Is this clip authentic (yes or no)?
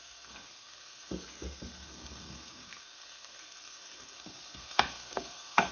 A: no